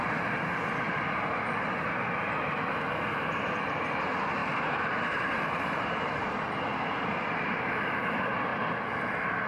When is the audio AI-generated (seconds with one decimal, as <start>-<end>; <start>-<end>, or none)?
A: 4.4-6.3